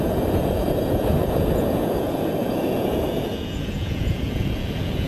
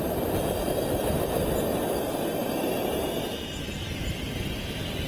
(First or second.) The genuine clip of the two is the second